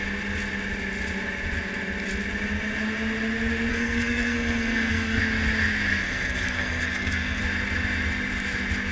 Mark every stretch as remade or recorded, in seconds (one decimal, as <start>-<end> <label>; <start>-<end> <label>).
0.0-3.7 recorded; 3.7-5.2 remade; 5.2-5.9 recorded; 5.9-7.4 remade; 7.4-8.9 recorded